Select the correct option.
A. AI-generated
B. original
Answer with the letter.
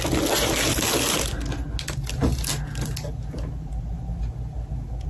B